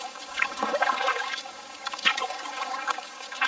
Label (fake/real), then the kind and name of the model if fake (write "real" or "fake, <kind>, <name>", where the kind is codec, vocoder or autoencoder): fake, codec, DAC